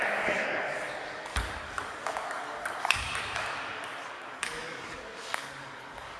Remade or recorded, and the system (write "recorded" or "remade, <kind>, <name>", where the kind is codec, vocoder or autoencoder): remade, codec, DAC